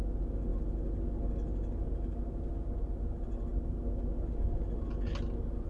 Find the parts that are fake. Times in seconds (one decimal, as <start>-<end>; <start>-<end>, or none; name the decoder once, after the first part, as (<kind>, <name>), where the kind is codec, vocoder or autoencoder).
none